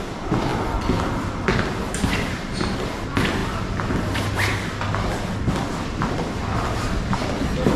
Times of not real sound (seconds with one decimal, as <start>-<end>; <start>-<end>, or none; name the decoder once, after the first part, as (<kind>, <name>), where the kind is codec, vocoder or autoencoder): none